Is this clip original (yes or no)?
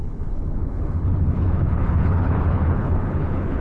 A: no